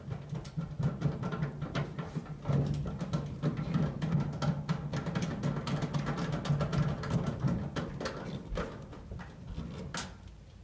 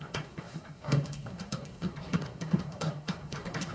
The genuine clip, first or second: first